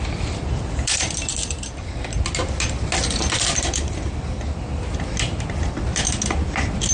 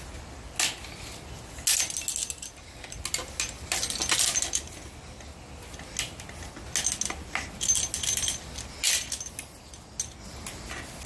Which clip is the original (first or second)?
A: second